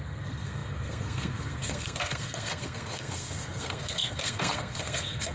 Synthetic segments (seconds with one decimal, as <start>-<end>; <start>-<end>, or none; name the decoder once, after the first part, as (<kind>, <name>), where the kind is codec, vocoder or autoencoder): 0.0-5.3 (codec, SNAC)